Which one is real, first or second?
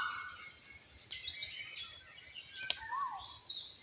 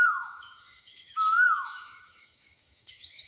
first